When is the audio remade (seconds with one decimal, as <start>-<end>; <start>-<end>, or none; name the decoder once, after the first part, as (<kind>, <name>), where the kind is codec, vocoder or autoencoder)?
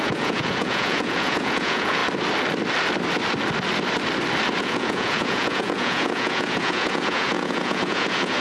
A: 0.0-2.0 (vocoder, Vocos); 4.6-8.4